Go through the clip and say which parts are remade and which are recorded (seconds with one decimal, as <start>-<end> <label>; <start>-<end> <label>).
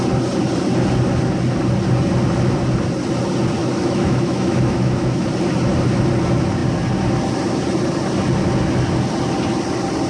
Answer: 0.0-3.6 recorded; 3.6-5.3 remade; 5.3-10.1 recorded